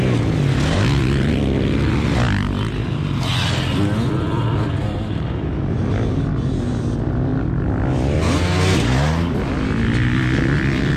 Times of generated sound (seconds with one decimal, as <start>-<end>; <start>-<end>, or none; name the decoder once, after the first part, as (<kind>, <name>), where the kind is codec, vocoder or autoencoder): none